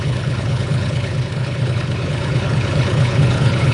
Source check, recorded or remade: remade